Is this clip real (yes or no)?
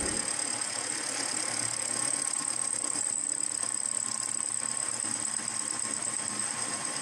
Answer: yes